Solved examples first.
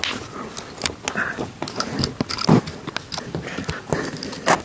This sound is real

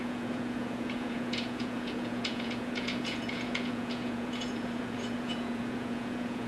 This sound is fake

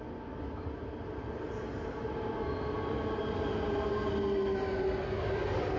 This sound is real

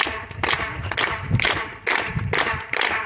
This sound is real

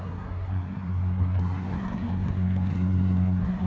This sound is fake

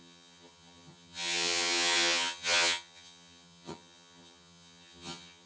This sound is fake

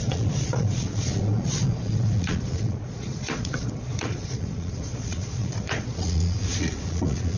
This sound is fake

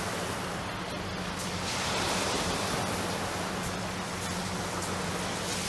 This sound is real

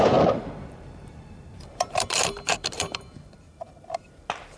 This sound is fake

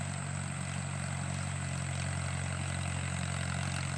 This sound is real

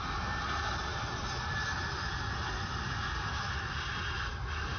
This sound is real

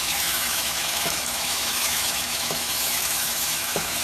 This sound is fake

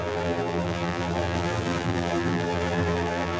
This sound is fake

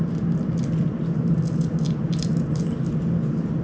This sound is real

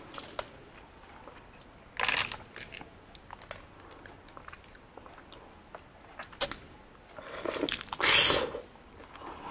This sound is real